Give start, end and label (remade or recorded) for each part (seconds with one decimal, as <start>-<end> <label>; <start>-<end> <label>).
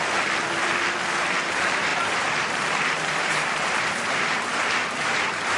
0.0-1.9 recorded; 1.9-5.6 remade